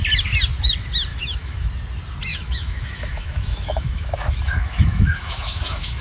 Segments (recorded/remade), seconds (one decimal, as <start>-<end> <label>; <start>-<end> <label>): 0.0-1.1 recorded; 1.1-1.7 remade; 1.7-2.3 recorded; 2.3-6.0 remade